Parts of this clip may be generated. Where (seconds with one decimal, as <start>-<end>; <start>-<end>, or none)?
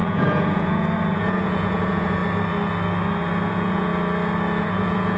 0.0-2.2; 3.5-3.9; 4.6-5.2